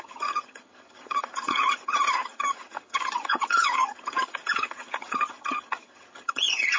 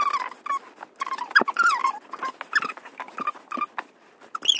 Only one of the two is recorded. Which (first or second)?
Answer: second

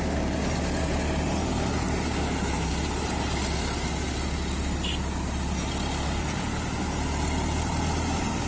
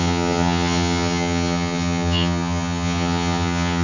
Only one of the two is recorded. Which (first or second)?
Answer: first